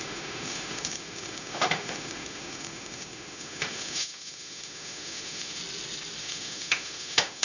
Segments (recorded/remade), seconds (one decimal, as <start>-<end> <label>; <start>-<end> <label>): 0.0-5.6 remade; 5.6-6.2 recorded; 6.2-7.4 remade